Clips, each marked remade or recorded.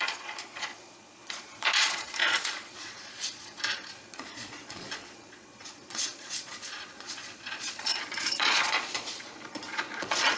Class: remade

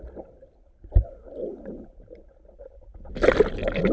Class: recorded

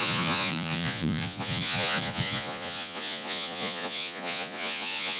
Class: remade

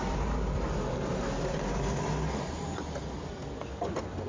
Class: recorded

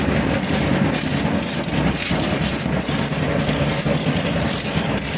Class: recorded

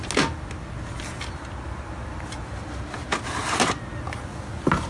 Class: recorded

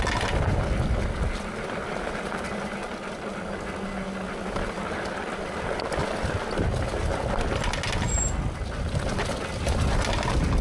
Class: recorded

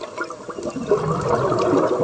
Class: recorded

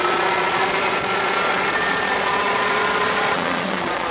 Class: remade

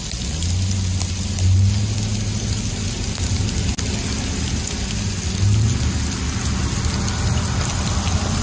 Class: recorded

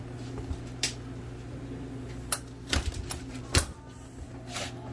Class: recorded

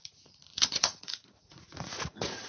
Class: remade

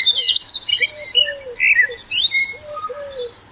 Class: recorded